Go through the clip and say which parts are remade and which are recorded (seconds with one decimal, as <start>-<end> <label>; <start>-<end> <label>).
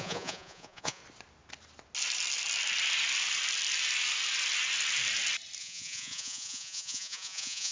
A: 0.0-1.0 remade; 1.0-5.6 recorded; 5.6-7.7 remade